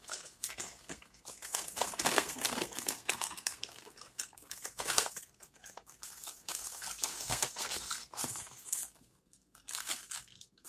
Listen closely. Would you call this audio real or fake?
fake